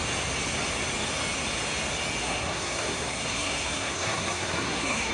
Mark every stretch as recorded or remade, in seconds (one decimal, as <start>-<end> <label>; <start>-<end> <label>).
0.0-2.2 recorded; 2.2-5.1 remade

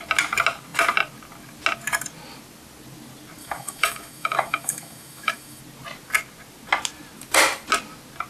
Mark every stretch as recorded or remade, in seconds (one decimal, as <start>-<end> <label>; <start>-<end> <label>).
0.0-3.4 recorded; 3.4-5.6 remade; 5.6-8.3 recorded

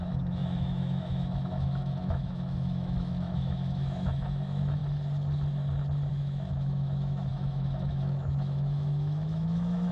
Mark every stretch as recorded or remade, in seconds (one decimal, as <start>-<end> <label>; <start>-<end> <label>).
0.0-4.8 remade; 4.8-6.1 recorded; 6.1-9.9 remade

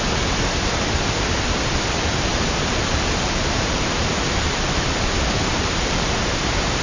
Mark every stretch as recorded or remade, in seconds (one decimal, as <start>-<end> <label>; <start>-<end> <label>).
0.0-2.3 recorded; 2.3-6.8 remade

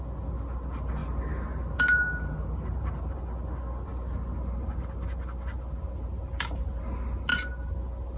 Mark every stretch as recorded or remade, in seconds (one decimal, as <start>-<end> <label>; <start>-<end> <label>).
0.0-1.0 recorded; 1.0-3.2 remade; 3.2-8.2 recorded

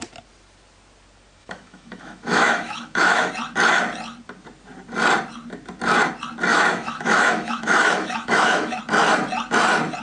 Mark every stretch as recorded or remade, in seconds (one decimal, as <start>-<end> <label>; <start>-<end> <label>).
0.0-1.4 recorded; 1.4-3.3 remade; 3.3-6.5 recorded; 6.5-8.8 remade; 8.8-10.0 recorded